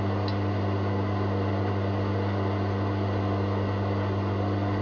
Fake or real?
real